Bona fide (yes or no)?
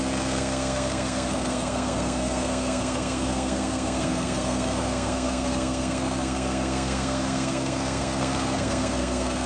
no